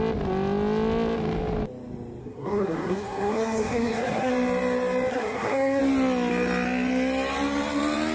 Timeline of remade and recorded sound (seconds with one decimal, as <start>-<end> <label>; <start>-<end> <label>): 0.0-2.2 recorded; 2.2-4.3 remade; 4.3-5.1 recorded; 5.1-5.8 remade; 5.8-8.1 recorded